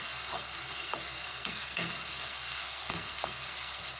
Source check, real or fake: fake